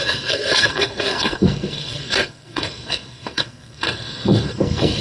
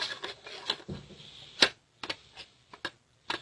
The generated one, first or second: first